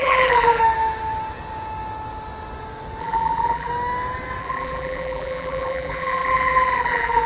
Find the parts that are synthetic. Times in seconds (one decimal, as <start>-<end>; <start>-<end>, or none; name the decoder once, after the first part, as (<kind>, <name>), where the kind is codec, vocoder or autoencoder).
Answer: 0.0-0.6 (vocoder, BigVGAN v2); 3.0-3.7; 4.4-7.3